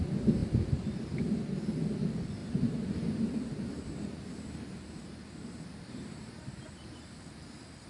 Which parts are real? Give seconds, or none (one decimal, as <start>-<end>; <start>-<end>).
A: 0.0-2.4; 7.1-7.9